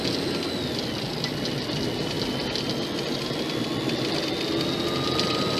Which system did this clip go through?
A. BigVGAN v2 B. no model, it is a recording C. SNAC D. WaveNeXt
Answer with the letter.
B